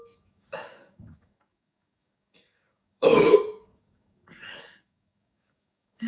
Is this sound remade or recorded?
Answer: remade